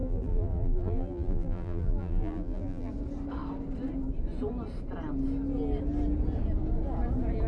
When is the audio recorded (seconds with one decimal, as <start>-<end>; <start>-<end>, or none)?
2.9-7.5